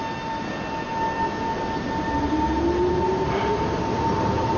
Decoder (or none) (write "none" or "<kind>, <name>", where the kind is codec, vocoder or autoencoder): none